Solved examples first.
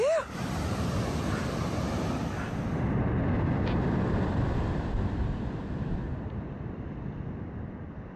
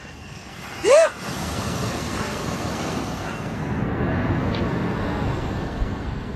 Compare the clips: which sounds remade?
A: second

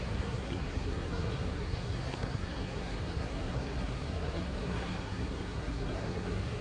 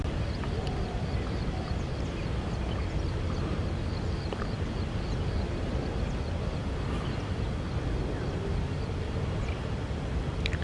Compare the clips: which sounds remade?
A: first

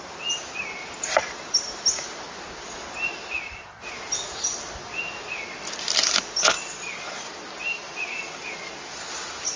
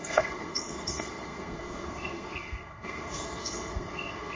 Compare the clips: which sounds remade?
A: second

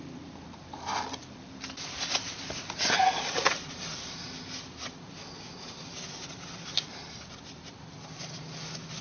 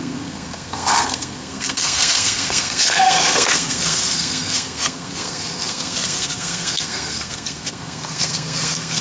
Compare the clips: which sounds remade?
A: second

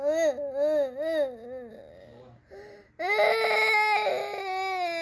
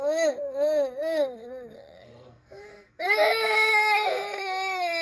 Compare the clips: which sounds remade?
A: second